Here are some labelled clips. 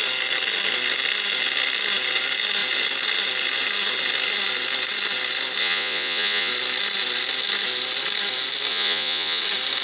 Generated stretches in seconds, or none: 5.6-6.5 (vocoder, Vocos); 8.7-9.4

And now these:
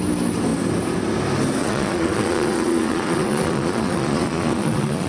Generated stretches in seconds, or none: 1.6-5.1 (vocoder, Vocos)

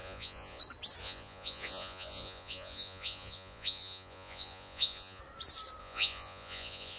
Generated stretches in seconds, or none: 0.0-0.6 (vocoder, Vocos); 1.0-5.2; 5.8-7.0

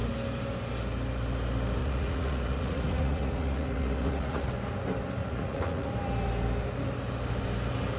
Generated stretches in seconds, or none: 1.8-4.5 (vocoder, Vocos); 5.2-5.9

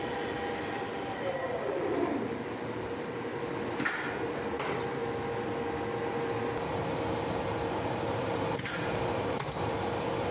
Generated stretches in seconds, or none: 0.0-3.3 (vocoder, BigVGAN v2); 4.2-5.0; 7.8-10.3

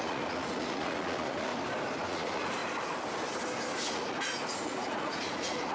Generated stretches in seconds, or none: 0.0-1.5 (vocoder, Vocos); 2.1-2.6; 3.8-5.7